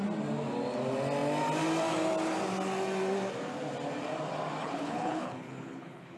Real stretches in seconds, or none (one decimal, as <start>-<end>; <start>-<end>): 0.0-4.6